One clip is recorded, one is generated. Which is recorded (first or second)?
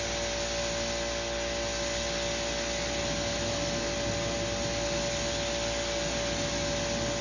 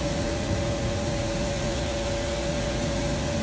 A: first